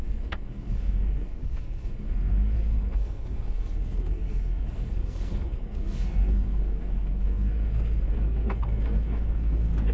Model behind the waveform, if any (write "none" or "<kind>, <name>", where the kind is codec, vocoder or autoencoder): codec, SNAC